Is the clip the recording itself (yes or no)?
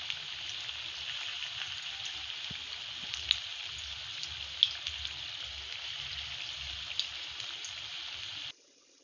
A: yes